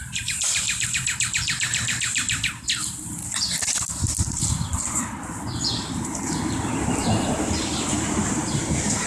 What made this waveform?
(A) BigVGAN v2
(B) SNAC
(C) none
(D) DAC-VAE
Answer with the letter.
A